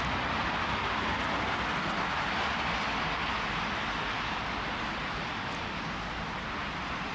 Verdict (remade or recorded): recorded